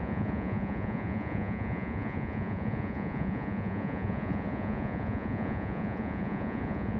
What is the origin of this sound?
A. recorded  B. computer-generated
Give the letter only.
B